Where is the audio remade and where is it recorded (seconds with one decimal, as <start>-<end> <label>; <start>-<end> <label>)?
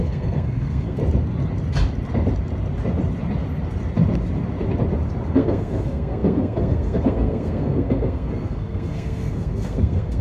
0.0-1.0 remade; 1.0-5.3 recorded; 5.3-10.2 remade